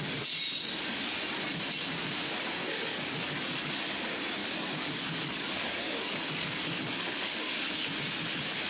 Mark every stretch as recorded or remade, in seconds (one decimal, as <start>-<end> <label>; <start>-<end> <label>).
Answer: 0.0-2.6 recorded; 2.6-3.7 remade; 3.7-4.4 recorded; 4.4-7.9 remade; 7.9-8.7 recorded